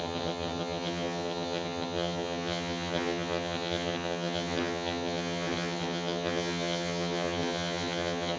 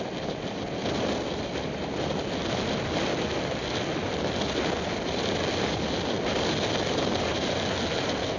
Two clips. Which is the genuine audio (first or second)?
second